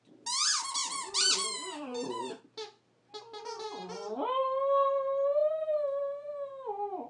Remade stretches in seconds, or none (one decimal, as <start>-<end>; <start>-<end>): 0.8-2.4; 5.4-6.5

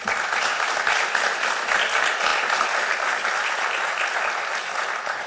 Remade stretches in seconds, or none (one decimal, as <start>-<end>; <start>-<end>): none

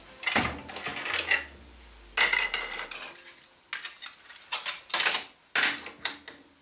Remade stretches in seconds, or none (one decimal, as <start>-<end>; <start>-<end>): none

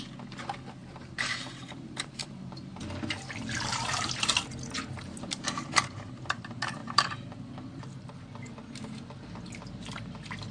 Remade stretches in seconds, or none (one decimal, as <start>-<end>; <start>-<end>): 0.8-2.7; 3.7-5.7; 6.8-8.5

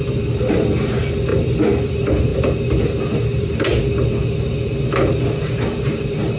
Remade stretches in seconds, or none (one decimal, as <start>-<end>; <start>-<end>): none